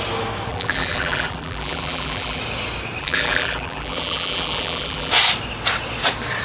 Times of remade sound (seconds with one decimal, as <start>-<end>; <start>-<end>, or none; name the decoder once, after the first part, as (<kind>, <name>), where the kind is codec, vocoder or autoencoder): 0.5-2.4 (vocoder, BigVGAN v2); 3.0-5.1